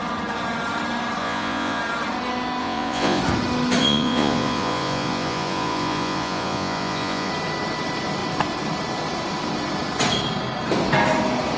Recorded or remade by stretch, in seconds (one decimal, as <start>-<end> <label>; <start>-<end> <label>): 0.0-1.2 recorded; 1.2-1.8 remade; 1.8-2.6 recorded; 2.6-3.2 remade; 3.2-3.8 recorded; 3.8-7.3 remade; 7.3-11.6 recorded